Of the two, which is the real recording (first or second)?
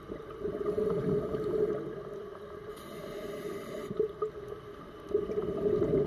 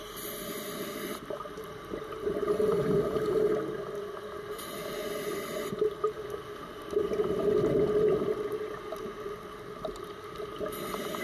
second